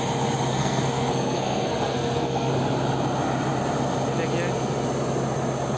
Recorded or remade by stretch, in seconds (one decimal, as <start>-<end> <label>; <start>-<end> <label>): 0.0-0.5 recorded; 0.5-2.5 remade; 2.5-5.8 recorded